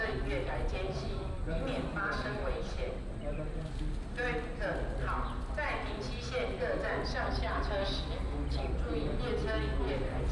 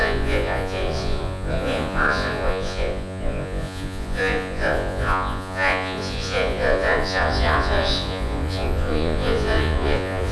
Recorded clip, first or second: first